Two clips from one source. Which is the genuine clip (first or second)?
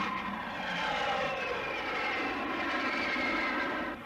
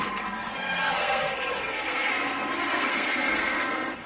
first